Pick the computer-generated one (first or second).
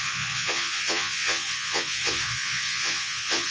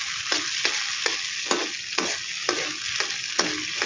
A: first